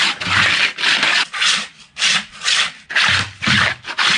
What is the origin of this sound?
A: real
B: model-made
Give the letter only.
A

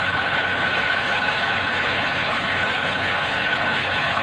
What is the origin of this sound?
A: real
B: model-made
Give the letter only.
B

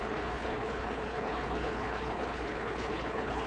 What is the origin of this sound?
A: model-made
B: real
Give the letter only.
A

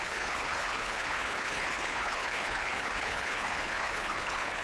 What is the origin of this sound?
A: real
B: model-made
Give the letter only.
B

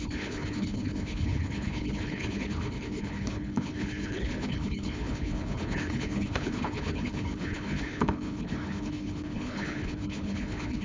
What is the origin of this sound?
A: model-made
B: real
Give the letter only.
A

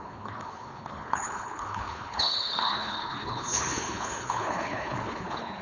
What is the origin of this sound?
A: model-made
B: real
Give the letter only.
A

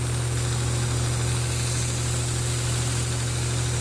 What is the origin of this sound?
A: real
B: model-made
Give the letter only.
A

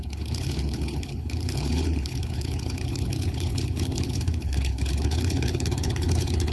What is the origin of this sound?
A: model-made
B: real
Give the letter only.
A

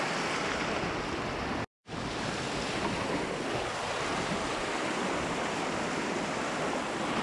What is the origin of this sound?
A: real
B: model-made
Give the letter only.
A